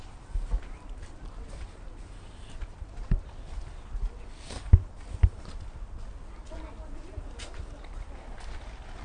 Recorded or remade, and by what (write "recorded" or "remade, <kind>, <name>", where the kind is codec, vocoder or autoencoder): recorded